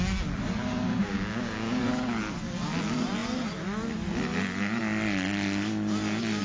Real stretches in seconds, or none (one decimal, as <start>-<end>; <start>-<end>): 0.0-1.0; 1.8-6.4